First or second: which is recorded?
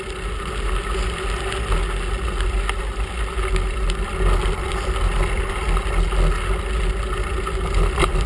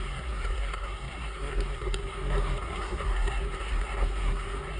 first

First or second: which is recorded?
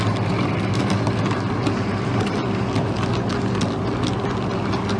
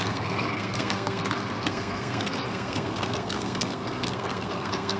first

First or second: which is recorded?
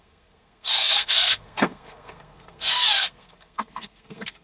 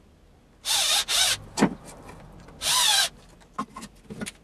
second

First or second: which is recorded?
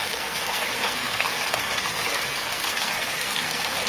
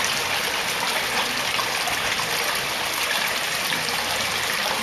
second